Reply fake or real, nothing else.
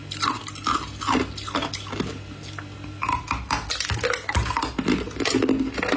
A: real